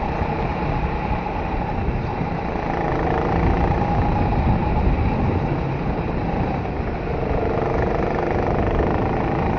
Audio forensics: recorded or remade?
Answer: recorded